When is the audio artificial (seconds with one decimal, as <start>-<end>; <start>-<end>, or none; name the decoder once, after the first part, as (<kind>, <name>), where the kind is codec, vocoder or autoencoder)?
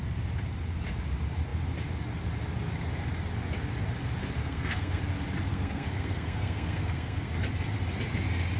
4.4-5.0 (codec, SNAC); 5.5-7.3